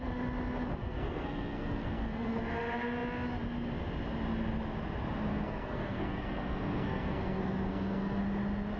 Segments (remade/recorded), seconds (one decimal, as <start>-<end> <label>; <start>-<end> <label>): 0.0-0.8 recorded; 0.8-2.4 remade; 2.4-5.3 recorded; 5.3-8.2 remade; 8.2-8.8 recorded